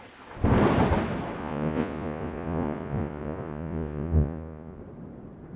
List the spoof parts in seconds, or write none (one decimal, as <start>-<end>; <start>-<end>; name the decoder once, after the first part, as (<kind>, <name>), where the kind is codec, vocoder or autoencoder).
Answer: 1.4-4.8 (vocoder, Vocos)